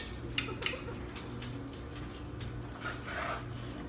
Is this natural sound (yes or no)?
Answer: yes